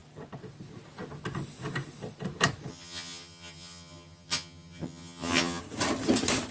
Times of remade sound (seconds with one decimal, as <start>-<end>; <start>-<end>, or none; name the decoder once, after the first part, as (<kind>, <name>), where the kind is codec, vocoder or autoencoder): 2.7-5.6 (vocoder, HiFi-GAN)